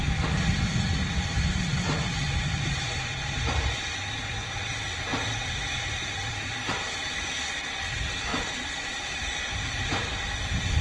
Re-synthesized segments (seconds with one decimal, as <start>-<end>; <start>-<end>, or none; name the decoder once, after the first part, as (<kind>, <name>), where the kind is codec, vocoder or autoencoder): 5.1-6.3 (vocoder, BigVGAN v2); 8.3-10.8